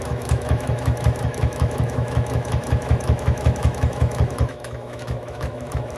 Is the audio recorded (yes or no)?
no